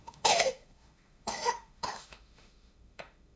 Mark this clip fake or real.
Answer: fake